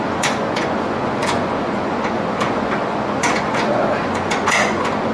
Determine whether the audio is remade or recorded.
remade